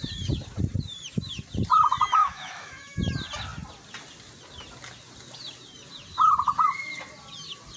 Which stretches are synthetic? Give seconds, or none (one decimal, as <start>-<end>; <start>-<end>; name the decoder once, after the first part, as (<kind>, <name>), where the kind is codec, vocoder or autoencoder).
2.2-3.0 (autoencoder, DAC-VAE)